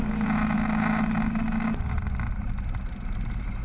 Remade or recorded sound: recorded